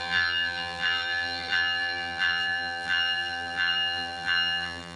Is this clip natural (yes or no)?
no